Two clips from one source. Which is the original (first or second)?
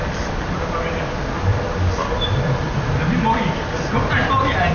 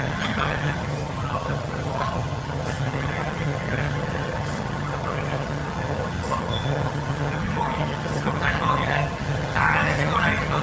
first